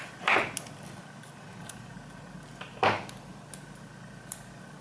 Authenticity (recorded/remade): recorded